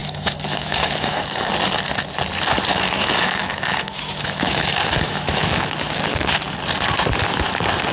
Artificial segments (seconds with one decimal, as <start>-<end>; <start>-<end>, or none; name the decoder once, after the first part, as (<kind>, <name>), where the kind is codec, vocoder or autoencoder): 0.0-1.5 (autoencoder, DAC-VAE); 2.7-6.1